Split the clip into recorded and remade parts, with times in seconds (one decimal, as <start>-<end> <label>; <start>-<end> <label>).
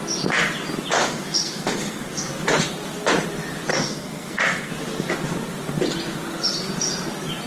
0.0-1.0 recorded; 1.0-2.3 remade; 2.3-3.7 recorded; 3.7-4.7 remade; 4.7-7.5 recorded